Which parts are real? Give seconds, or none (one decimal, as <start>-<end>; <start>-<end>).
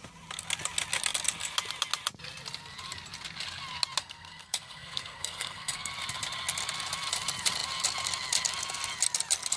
0.0-4.0; 5.9-9.6